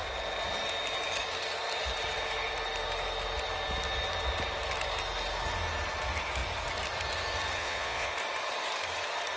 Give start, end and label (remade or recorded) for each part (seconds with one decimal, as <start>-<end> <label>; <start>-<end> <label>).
0.0-7.6 recorded; 7.6-8.1 remade; 8.1-9.4 recorded